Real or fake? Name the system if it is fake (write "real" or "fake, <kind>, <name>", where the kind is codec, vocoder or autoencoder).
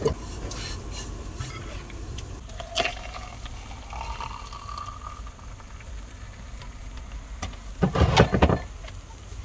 real